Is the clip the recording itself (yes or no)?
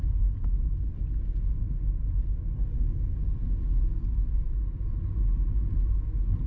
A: yes